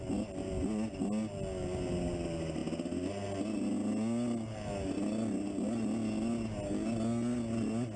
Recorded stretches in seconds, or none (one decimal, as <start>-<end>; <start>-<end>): 0.0-8.0